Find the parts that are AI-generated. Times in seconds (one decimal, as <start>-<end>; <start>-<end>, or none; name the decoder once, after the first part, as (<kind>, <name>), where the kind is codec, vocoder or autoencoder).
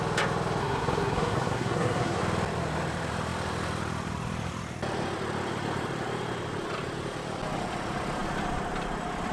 0.6-2.2 (codec, SNAC)